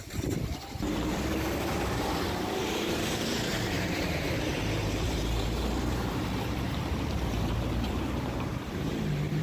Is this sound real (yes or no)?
no